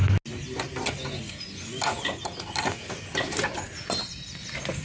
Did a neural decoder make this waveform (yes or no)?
no